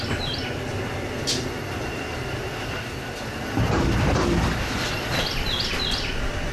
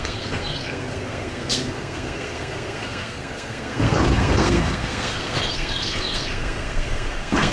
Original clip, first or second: first